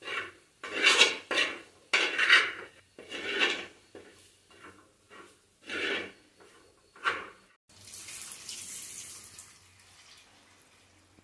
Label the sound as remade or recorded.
recorded